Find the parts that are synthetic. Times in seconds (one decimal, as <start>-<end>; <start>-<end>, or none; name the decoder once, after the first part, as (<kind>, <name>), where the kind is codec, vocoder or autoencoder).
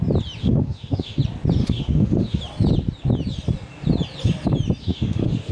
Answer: 0.4-1.2 (autoencoder, DAC-VAE); 1.6-2.4; 4.8-5.5